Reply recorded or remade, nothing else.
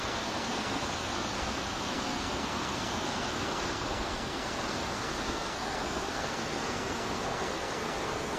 remade